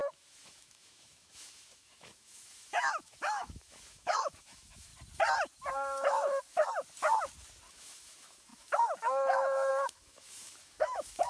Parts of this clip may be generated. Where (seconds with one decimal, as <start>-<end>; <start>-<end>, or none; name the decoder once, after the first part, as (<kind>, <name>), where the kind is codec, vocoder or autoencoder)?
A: 0.0-4.9 (autoencoder, DAC-VAE); 5.7-6.7; 7.7-11.3

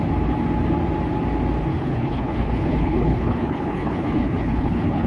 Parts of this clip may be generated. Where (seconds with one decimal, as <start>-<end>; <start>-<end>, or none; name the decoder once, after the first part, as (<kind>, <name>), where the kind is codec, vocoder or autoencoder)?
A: 1.7-5.1 (codec, HILCodec)

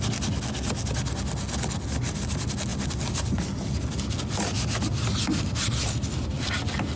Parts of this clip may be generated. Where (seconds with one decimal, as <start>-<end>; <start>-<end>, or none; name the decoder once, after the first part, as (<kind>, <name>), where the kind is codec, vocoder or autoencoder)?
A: none

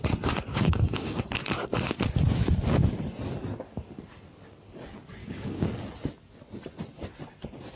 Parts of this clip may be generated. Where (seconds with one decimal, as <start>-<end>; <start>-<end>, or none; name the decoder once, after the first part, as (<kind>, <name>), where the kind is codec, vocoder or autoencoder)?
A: 0.5-1.2 (codec, DAC); 5.2-5.7

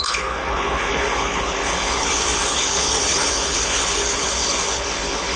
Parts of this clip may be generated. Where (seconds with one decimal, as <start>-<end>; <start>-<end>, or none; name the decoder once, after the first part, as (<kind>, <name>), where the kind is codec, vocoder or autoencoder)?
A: 0.0-5.4 (codec, HILCodec)

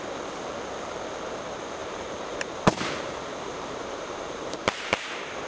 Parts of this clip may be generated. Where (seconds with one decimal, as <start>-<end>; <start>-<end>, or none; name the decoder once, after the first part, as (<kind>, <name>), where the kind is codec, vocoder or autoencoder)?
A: 1.8-5.1 (vocoder, BigVGAN v2)

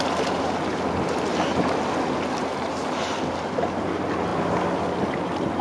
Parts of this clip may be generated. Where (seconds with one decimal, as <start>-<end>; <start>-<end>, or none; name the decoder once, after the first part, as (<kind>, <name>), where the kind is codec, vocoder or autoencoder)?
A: none

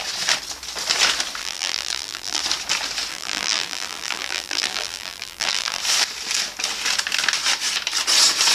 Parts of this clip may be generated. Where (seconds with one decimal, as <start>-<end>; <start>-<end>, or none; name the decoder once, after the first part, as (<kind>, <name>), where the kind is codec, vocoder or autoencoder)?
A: 1.4-2.4 (vocoder, BigVGAN v2); 3.1-5.8